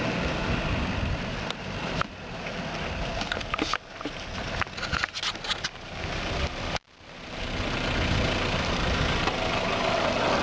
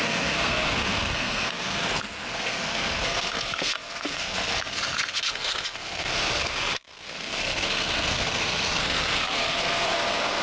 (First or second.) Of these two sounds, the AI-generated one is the second